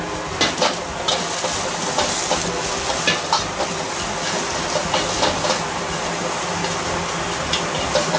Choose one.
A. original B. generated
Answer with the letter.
A